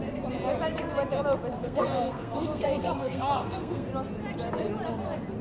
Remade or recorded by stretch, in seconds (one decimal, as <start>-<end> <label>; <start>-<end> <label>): 0.0-1.6 recorded; 1.6-3.9 remade; 3.9-5.4 recorded